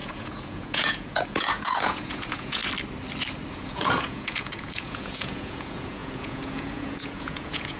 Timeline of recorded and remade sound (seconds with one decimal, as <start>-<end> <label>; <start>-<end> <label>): 0.0-2.6 remade; 2.6-3.5 recorded; 3.5-7.8 remade